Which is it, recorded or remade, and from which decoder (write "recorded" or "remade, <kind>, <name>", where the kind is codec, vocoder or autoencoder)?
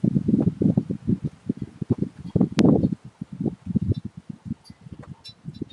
recorded